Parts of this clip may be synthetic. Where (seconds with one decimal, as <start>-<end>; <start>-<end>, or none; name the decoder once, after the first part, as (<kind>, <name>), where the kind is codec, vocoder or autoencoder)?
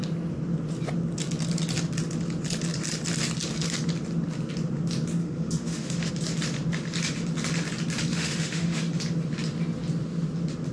5.2-6.1 (autoencoder, DAC-VAE); 8.1-8.8